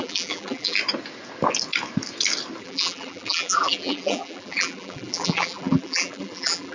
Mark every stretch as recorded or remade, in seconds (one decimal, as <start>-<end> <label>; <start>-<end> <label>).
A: 0.0-0.8 remade; 0.8-2.6 recorded; 2.6-6.7 remade